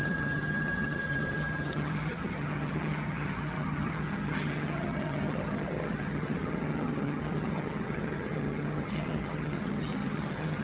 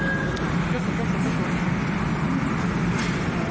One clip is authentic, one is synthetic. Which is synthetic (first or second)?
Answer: first